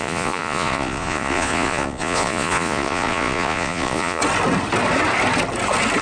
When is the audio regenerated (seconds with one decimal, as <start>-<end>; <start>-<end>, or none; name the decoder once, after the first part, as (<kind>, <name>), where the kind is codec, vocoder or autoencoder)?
0.0-4.2 (vocoder, Vocos)